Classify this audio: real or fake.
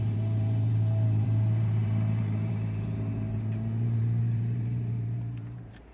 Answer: fake